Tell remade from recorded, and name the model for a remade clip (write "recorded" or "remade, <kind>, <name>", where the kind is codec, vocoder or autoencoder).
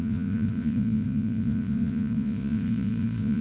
remade, vocoder, Vocos